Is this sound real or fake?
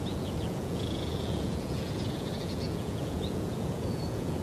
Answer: fake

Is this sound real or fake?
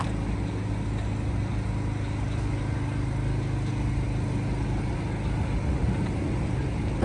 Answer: real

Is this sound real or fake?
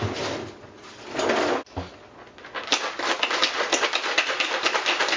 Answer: real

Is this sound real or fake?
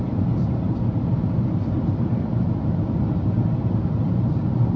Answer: fake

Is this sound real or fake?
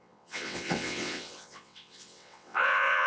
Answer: fake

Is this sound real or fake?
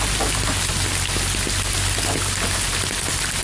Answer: real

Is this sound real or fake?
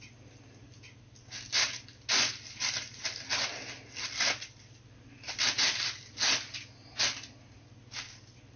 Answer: real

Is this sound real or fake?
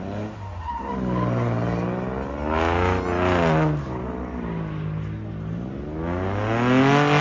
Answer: real